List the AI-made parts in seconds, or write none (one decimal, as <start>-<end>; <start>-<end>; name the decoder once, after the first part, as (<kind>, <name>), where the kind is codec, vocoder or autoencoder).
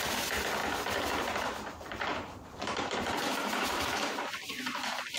2.1-4.2 (vocoder, BigVGAN v2)